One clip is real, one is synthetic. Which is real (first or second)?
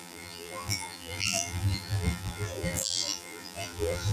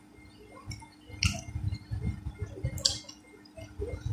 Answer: second